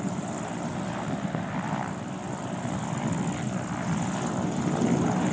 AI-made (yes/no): no